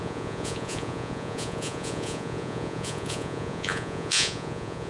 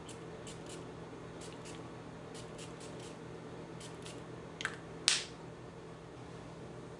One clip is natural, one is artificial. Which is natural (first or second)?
second